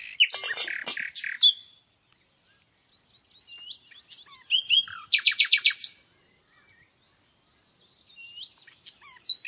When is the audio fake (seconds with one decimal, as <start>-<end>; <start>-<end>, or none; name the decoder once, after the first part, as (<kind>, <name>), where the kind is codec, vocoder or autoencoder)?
none